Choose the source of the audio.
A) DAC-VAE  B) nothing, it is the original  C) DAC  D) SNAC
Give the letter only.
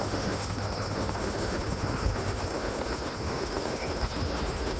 A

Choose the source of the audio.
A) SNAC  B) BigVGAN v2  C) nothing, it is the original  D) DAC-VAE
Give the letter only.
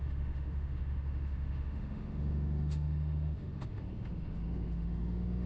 D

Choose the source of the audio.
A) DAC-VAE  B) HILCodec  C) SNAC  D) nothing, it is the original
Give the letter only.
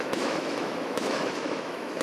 A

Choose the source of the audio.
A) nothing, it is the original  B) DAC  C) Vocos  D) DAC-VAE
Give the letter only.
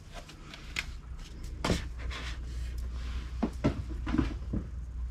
A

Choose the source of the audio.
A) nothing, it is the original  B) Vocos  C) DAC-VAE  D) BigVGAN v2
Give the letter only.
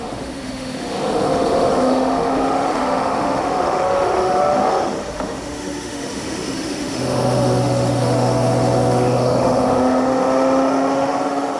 C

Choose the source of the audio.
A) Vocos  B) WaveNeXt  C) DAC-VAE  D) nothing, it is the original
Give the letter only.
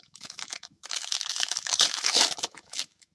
C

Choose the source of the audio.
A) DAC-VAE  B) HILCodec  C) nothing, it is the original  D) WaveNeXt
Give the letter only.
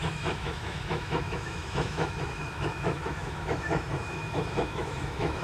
A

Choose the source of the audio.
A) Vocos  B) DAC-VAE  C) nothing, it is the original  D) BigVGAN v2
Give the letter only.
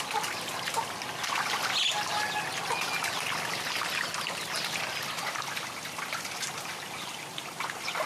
C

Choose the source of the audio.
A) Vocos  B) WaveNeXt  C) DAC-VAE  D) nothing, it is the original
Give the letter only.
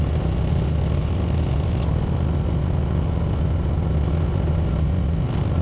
D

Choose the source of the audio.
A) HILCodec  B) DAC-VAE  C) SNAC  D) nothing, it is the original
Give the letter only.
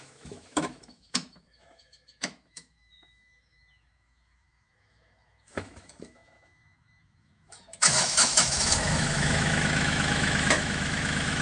B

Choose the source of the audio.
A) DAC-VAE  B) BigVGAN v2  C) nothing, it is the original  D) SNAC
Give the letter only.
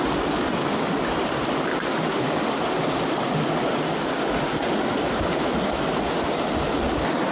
C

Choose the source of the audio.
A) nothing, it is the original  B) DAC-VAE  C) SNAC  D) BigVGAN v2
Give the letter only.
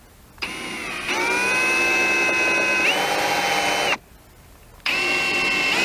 A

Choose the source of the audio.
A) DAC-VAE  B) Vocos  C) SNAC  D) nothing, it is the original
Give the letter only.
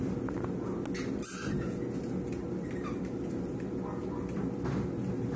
D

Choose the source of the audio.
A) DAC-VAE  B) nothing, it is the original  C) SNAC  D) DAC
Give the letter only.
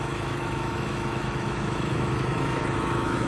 A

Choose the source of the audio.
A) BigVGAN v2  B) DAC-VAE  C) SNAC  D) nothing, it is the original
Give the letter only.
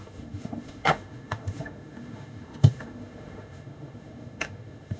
B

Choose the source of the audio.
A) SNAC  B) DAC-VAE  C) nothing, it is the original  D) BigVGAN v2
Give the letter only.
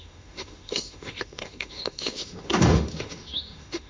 B